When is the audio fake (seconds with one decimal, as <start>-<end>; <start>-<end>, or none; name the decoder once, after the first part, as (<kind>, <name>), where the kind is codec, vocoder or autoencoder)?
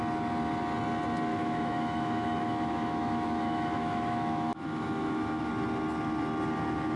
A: 1.3-5.5 (autoencoder, DAC-VAE)